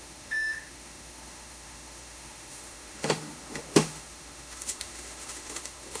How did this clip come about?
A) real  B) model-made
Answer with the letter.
B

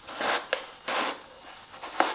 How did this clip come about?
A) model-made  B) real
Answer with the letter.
B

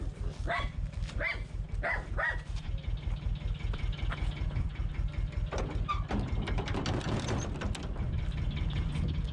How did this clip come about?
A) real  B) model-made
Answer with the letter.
A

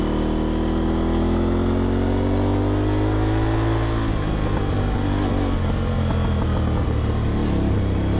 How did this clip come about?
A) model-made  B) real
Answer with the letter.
B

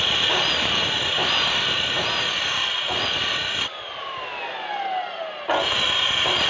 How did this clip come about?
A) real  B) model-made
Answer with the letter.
A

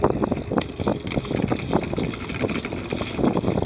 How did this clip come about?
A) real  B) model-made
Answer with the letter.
A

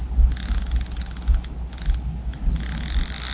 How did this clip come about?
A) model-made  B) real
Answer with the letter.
B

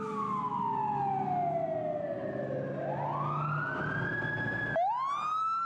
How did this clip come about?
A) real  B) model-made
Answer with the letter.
A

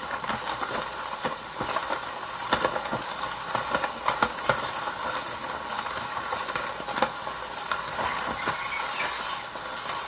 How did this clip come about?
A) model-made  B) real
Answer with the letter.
B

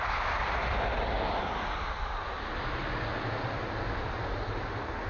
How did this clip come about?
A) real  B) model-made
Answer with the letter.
A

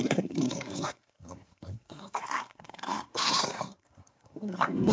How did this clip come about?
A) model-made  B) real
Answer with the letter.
A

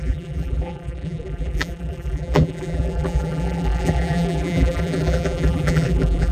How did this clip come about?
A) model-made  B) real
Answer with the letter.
A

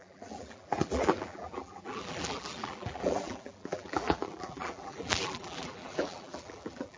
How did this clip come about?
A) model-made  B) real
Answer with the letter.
A